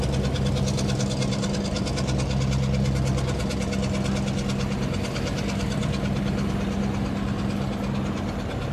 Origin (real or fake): real